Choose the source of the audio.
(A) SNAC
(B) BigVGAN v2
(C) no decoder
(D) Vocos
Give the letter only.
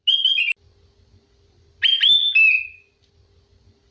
C